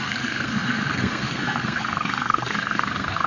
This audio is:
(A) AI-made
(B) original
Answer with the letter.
A